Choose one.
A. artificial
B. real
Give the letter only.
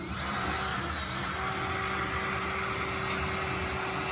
B